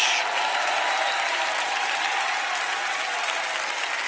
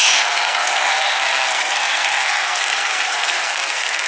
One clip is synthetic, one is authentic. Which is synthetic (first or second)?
second